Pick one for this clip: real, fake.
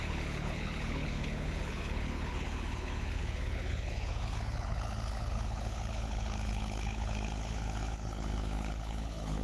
fake